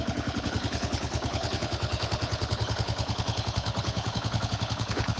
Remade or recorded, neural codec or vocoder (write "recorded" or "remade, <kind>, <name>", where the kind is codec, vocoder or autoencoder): remade, codec, HILCodec